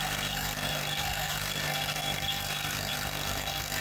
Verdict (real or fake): fake